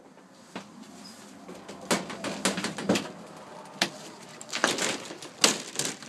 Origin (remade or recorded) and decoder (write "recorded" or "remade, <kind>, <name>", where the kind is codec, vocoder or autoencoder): recorded